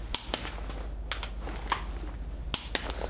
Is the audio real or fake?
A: real